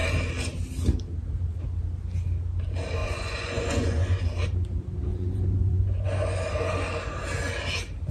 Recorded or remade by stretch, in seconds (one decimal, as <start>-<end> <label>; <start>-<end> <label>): 0.0-3.0 recorded; 3.0-4.2 remade; 4.2-5.1 recorded; 5.1-6.4 remade; 6.4-8.1 recorded

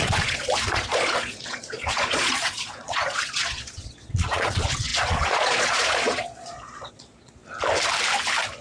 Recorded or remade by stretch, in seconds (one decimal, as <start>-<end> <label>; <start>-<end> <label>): 0.0-7.4 remade; 7.4-8.6 recorded

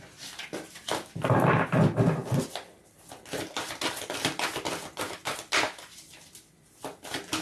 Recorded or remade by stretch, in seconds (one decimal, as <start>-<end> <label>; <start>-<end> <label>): 0.0-7.4 recorded

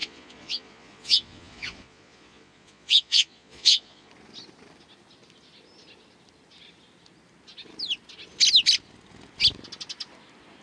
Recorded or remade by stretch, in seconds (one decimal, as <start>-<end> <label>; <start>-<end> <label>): 0.0-4.1 remade; 4.1-10.6 recorded